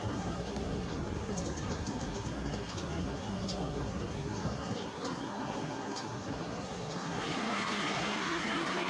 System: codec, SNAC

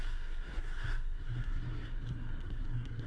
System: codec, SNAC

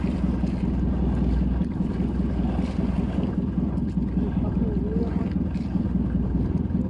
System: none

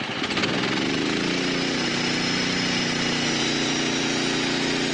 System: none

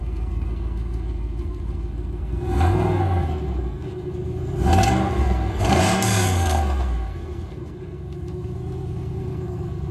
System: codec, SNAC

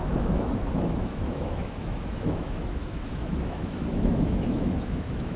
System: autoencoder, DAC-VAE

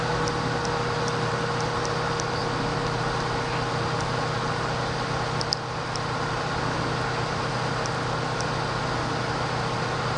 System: none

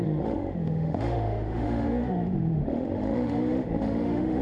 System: autoencoder, DAC-VAE